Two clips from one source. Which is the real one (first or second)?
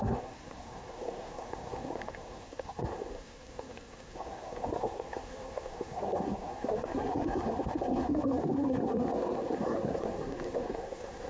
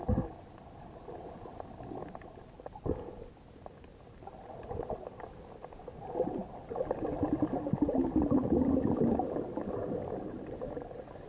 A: second